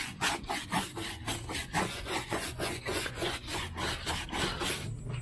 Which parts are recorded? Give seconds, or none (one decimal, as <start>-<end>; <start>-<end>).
0.8-1.6; 3.8-5.2